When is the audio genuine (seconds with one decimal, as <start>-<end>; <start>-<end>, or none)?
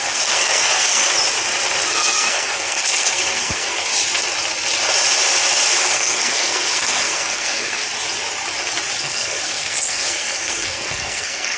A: 1.0-1.9; 3.9-5.8; 7.8-9.0